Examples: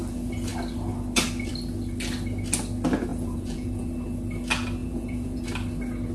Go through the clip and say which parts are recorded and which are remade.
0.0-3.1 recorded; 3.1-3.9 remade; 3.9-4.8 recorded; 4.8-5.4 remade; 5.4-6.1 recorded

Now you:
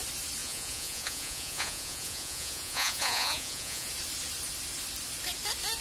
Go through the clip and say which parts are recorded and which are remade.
0.0-0.4 recorded; 0.4-3.9 remade; 3.9-5.8 recorded

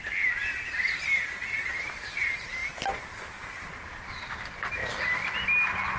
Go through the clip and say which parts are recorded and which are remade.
0.0-0.9 recorded; 0.9-2.6 remade; 2.6-4.1 recorded; 4.1-4.8 remade; 4.8-6.0 recorded

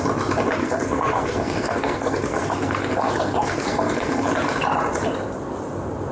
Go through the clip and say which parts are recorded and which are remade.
0.0-0.6 recorded; 0.6-4.3 remade; 4.3-6.1 recorded

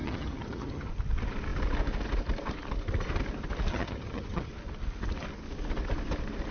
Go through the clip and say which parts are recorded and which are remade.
0.0-0.9 remade; 0.9-3.7 recorded; 3.7-4.5 remade; 4.5-6.5 recorded

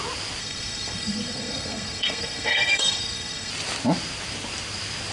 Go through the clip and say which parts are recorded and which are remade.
0.0-0.4 recorded; 0.4-3.5 remade; 3.5-5.1 recorded

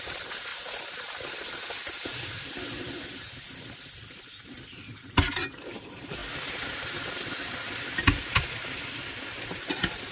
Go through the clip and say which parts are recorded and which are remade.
0.0-10.1 recorded